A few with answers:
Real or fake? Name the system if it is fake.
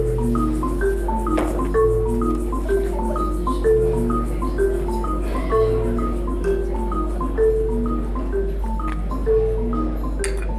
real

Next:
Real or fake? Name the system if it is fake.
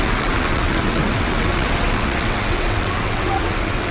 fake, vocoder, WaveNeXt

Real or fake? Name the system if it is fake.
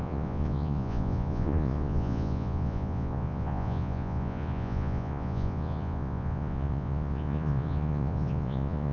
fake, vocoder, Vocos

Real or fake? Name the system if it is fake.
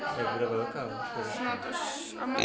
real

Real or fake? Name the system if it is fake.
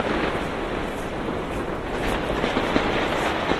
real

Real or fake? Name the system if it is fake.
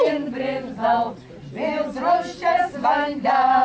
real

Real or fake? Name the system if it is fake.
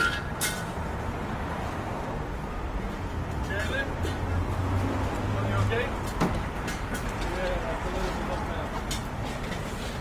real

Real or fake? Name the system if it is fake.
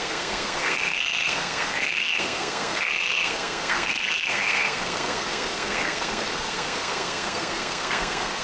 fake, codec, SNAC